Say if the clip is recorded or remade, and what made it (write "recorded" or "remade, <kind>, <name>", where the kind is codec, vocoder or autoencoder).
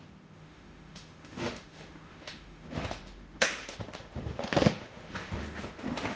remade, autoencoder, DAC-VAE